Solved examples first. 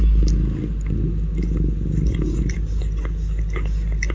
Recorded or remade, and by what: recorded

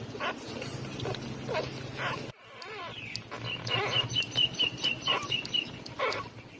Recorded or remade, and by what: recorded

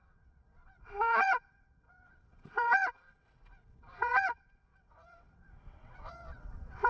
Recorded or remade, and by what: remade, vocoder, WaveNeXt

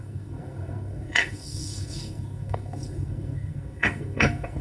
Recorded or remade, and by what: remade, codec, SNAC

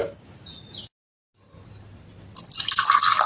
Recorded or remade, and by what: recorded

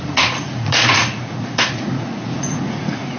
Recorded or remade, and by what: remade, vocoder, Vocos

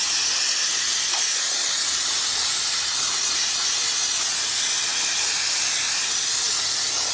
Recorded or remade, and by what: recorded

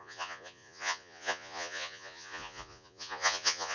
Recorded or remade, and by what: remade, vocoder, Vocos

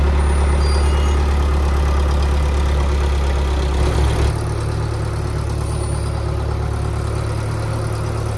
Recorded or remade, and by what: recorded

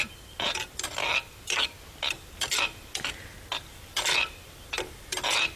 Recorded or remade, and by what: recorded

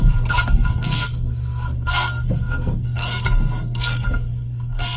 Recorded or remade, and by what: remade, codec, SNAC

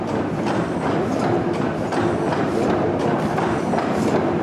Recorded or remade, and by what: recorded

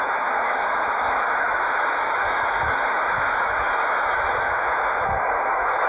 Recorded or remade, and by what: remade, autoencoder, DAC-VAE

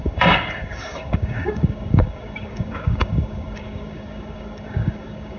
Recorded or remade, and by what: remade, codec, DAC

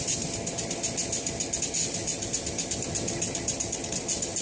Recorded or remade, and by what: recorded